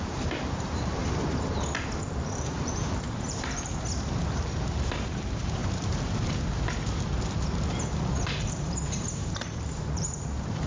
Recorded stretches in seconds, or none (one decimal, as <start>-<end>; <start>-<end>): 1.0-2.1; 3.7-4.4; 5.6-8.1